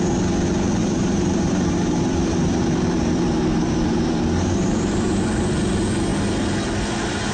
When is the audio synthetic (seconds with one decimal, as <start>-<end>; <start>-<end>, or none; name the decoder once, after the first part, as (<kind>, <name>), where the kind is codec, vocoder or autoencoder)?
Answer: 0.8-5.2 (vocoder, BigVGAN v2)